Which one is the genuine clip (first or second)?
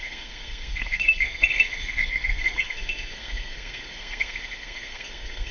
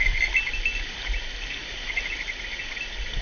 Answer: second